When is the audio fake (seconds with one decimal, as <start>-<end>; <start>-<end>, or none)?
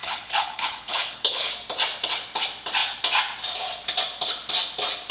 0.0-1.5